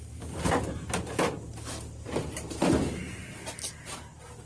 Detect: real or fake real